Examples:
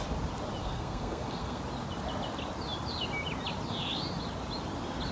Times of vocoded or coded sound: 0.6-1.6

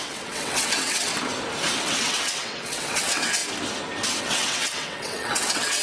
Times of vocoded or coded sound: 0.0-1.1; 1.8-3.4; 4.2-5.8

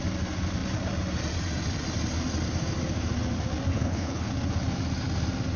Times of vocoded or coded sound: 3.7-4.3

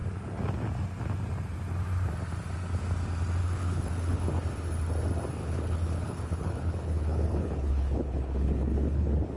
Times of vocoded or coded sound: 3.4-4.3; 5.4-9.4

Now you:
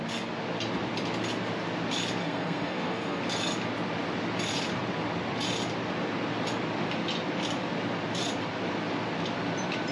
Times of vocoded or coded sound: 2.2-3.2

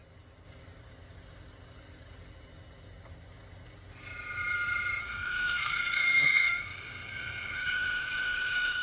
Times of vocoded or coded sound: 5.0-8.8